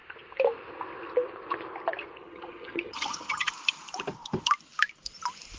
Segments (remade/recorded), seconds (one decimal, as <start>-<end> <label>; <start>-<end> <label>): 0.0-2.2 recorded; 2.2-3.5 remade; 3.5-5.6 recorded